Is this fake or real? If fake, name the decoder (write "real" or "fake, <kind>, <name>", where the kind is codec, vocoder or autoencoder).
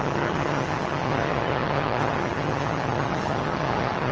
fake, vocoder, HiFi-GAN